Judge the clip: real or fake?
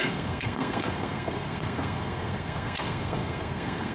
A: fake